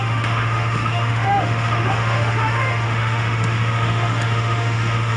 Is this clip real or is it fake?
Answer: fake